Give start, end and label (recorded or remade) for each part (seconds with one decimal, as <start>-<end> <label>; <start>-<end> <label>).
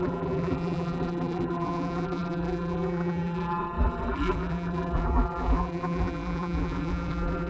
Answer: 0.0-7.5 remade